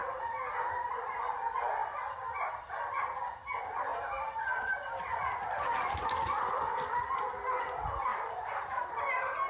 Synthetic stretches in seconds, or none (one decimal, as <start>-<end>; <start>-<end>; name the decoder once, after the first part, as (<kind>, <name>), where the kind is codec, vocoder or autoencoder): 0.0-0.7 (vocoder, BigVGAN v2); 8.1-8.8